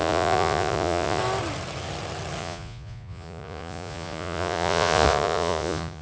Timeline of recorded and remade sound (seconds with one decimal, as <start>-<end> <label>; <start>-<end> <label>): 0.0-1.2 remade; 1.2-2.4 recorded; 2.4-6.0 remade